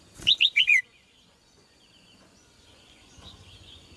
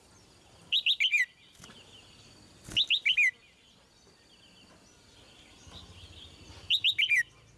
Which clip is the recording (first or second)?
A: second